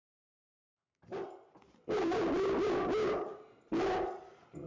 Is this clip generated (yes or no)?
no